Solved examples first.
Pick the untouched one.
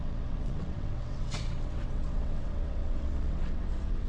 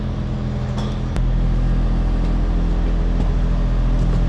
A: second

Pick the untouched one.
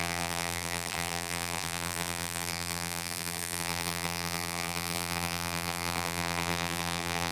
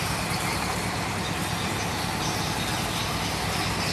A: second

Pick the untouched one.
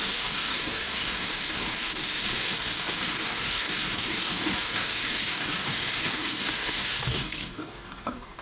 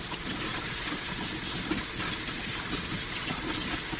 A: second